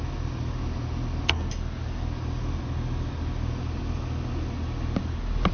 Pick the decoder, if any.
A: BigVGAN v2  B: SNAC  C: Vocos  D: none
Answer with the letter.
D